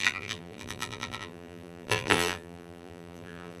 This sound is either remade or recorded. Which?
remade